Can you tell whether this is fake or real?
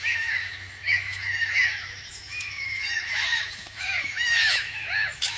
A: fake